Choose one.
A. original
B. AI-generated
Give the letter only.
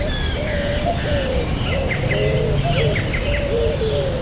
A